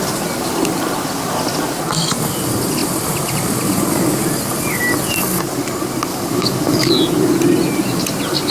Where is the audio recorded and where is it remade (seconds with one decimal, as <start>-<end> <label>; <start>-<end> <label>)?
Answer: 0.0-6.1 recorded; 6.1-6.9 remade; 6.9-8.5 recorded